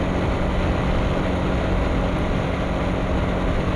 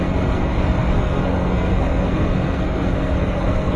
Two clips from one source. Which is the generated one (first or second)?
second